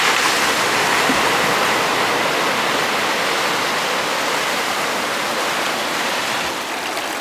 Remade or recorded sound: recorded